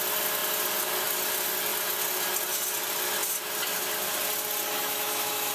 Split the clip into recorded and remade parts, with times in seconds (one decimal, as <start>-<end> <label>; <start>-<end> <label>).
0.0-4.8 recorded; 4.8-5.5 remade